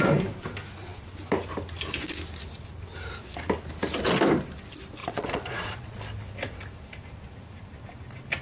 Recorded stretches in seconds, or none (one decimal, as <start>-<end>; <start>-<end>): 0.0-5.0; 6.0-8.4